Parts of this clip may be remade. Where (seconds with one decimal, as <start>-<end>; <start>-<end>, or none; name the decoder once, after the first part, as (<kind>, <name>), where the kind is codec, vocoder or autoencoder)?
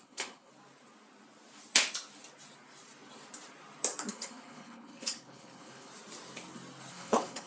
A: 0.0-0.5 (codec, HILCodec); 4.1-5.9; 6.9-7.5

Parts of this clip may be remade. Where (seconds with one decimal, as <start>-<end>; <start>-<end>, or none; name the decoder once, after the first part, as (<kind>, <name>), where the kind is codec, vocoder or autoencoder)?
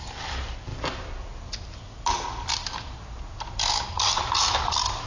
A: none